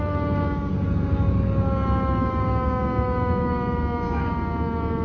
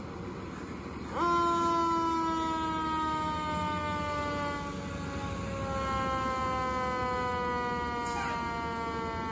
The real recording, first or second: second